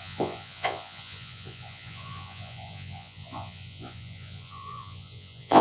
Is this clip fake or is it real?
fake